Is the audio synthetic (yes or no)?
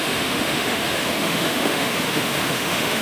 yes